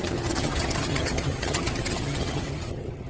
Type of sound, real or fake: fake